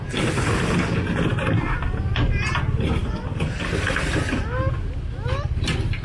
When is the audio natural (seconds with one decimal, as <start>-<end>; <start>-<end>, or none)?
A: 0.0-6.0